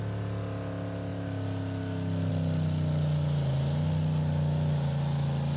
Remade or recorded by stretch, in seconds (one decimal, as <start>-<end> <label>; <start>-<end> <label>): 0.0-5.6 recorded